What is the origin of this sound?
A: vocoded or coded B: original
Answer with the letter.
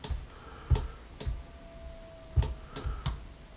B